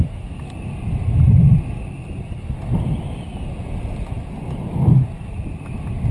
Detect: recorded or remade recorded